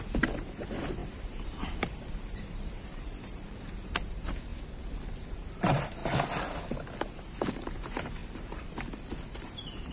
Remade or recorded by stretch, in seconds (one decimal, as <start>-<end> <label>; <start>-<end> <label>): 0.0-4.5 remade; 4.5-5.5 recorded; 5.5-6.0 remade; 6.0-7.0 recorded; 7.0-8.2 remade; 8.2-9.1 recorded; 9.1-9.9 remade